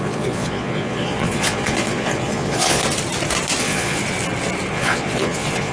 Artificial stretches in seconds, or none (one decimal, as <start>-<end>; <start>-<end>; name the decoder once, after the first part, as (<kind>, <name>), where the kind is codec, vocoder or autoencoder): 0.0-2.8 (vocoder, Vocos); 3.6-4.0; 4.7-5.7